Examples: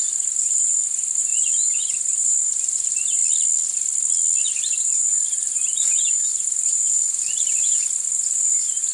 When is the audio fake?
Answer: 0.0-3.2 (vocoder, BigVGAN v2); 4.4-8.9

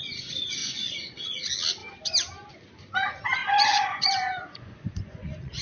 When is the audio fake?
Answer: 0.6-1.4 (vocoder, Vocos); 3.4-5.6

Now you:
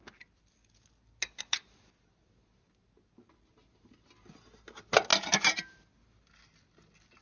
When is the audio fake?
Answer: none

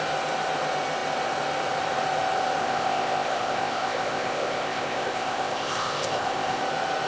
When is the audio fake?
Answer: 2.6-6.6 (codec, ZipCodec)

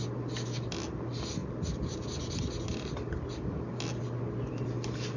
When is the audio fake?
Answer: none